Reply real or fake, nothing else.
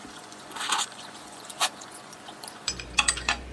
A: fake